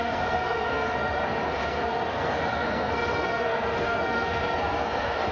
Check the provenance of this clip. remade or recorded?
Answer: remade